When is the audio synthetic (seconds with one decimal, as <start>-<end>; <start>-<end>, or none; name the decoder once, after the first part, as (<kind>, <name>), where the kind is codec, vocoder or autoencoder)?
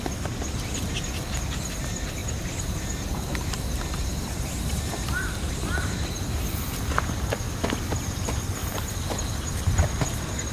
2.2-7.3 (vocoder, BigVGAN v2); 8.6-10.0